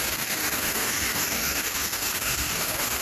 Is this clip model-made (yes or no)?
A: yes